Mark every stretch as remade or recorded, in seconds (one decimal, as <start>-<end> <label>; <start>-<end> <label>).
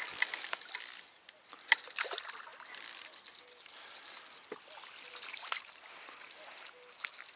0.0-7.4 recorded